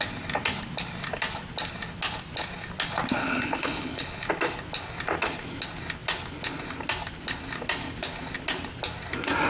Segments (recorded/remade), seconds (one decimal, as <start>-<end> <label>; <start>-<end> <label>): 0.0-3.2 recorded; 3.2-4.3 remade; 4.3-9.5 recorded